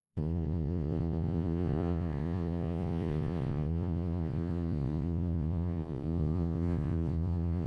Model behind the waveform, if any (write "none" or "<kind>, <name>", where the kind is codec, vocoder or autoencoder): vocoder, Vocos